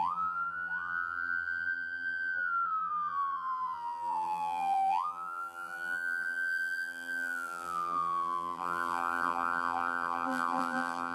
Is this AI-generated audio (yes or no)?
yes